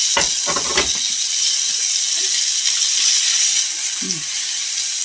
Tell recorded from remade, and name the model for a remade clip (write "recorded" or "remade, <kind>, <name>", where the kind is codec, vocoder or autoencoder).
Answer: recorded